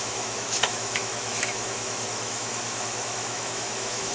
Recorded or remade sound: remade